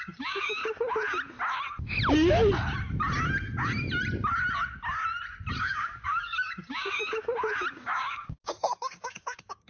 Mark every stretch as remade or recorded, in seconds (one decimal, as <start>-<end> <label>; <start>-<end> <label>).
0.0-0.6 remade; 0.6-5.6 recorded; 5.6-7.0 remade; 7.0-7.7 recorded; 7.7-9.7 remade